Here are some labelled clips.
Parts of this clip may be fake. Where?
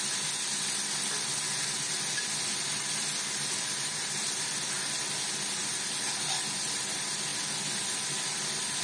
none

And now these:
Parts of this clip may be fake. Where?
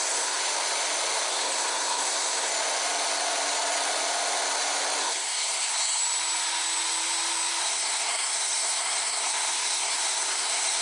0.0-0.4 (codec, SNAC); 1.3-2.5; 5.0-6.0; 7.6-10.8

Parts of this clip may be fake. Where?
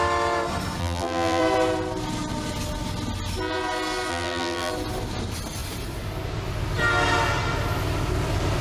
0.8-1.4 (vocoder, BigVGAN v2); 4.1-4.7